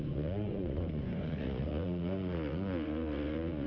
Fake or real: fake